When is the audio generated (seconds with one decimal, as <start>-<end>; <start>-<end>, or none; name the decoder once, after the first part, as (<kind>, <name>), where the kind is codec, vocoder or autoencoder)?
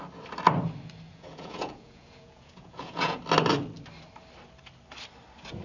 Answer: 1.1-3.2 (vocoder, Vocos)